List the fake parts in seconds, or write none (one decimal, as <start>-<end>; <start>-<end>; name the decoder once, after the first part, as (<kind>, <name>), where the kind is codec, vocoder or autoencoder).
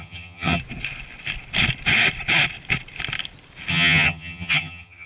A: 0.0-0.6 (vocoder, HiFi-GAN); 3.7-5.1